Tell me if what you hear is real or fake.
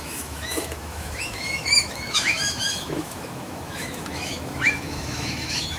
fake